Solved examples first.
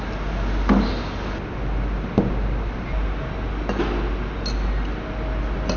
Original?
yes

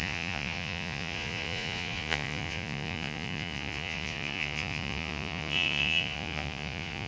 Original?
no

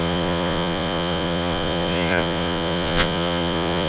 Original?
no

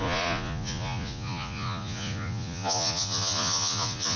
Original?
no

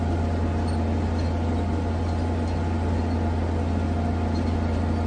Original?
yes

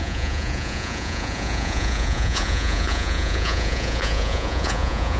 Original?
no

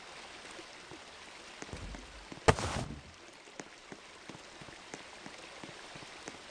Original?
yes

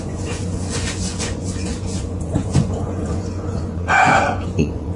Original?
no